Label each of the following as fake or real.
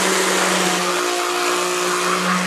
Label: real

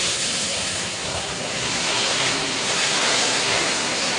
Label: fake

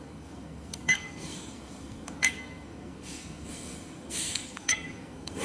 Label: fake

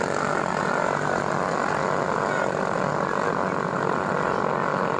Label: real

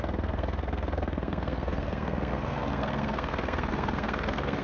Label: fake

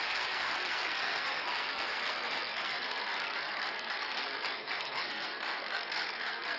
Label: fake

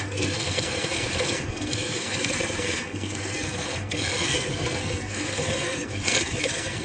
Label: fake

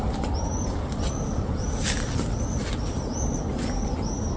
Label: real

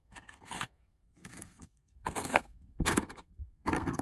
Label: fake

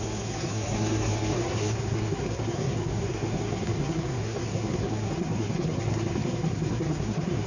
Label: fake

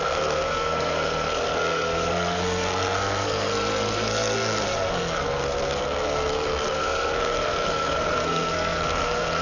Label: fake